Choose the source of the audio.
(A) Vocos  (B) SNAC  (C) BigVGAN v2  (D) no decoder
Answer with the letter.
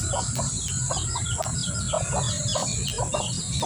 C